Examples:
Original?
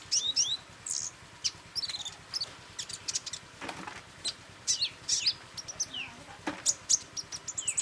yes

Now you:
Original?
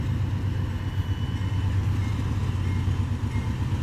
yes